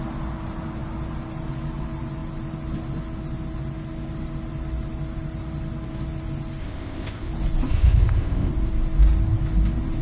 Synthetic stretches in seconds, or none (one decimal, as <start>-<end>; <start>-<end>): 6.6-7.3; 7.7-8.5